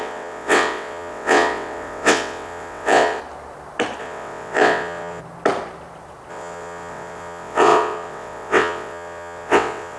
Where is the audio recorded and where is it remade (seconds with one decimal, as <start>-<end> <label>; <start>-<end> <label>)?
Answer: 0.0-3.2 remade; 3.2-4.0 recorded; 4.0-5.2 remade; 5.2-6.3 recorded; 6.3-10.0 remade